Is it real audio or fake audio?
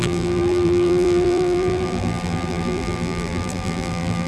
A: fake